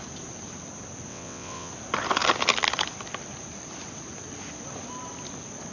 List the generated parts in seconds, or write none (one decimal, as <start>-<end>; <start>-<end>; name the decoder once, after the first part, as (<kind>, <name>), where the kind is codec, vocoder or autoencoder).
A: 1.1-1.7 (vocoder, WaveNeXt)